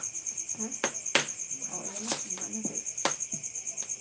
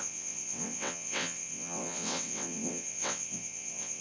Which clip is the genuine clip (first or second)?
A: first